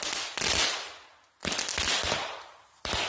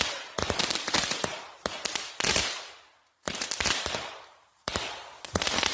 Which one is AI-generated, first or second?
second